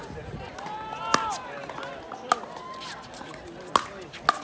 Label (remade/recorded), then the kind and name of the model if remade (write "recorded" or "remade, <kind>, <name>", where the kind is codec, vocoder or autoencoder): recorded